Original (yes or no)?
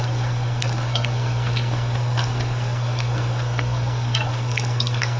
no